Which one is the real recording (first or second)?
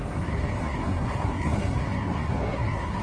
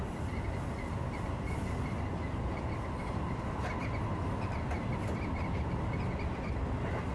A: second